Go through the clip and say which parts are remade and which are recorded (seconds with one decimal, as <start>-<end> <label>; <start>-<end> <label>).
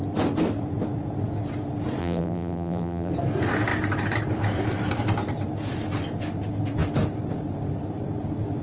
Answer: 0.0-2.0 recorded; 2.0-3.1 remade; 3.1-8.6 recorded